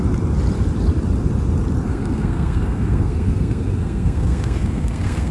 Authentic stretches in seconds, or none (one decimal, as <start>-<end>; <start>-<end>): 0.0-1.9